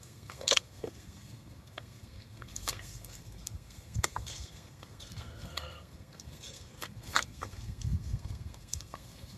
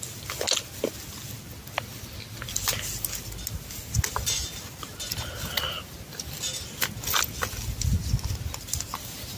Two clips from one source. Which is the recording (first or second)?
second